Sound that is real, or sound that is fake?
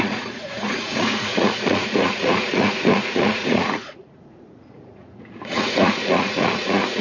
fake